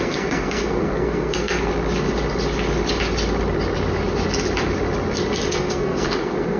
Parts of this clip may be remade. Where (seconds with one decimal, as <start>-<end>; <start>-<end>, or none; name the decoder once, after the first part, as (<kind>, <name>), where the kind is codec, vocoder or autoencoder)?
0.0-1.7 (codec, SNAC); 5.5-6.6